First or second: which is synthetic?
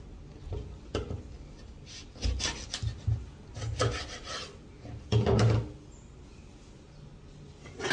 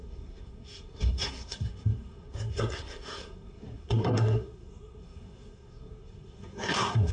second